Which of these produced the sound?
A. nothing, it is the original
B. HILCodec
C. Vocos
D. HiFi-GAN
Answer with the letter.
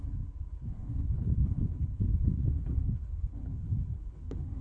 B